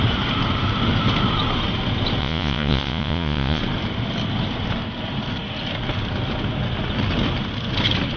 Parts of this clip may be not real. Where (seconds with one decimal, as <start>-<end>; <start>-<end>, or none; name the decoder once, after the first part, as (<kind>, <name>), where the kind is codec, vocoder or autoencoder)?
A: 2.2-3.6 (vocoder, Vocos)